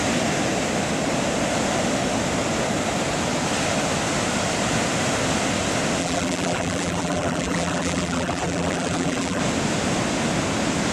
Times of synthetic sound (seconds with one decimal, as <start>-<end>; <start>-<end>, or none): 6.0-9.4